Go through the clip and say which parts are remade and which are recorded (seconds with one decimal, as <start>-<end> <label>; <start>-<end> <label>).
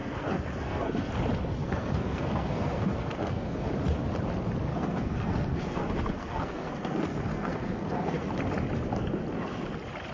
0.0-1.1 remade; 1.1-1.6 recorded; 1.6-3.7 remade; 3.7-4.7 recorded; 4.7-8.3 remade; 8.3-10.1 recorded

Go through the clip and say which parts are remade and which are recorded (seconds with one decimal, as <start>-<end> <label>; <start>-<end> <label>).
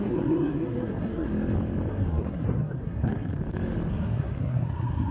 0.0-1.3 remade; 1.3-1.9 recorded; 1.9-3.3 remade; 3.3-3.9 recorded; 3.9-5.1 remade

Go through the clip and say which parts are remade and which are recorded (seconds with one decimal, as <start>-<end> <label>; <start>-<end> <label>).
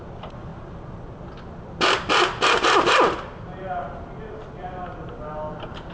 0.0-5.9 recorded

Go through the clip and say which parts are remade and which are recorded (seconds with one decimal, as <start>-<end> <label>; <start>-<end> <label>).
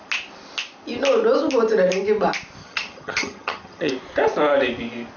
0.0-2.6 recorded; 2.6-3.9 remade; 3.9-5.2 recorded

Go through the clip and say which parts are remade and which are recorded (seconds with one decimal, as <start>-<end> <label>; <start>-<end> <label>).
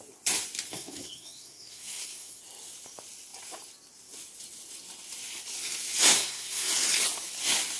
0.0-0.7 recorded; 0.7-2.4 remade; 2.4-6.1 recorded; 6.1-6.7 remade; 6.7-7.8 recorded